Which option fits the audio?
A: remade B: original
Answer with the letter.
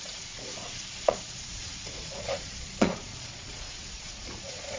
A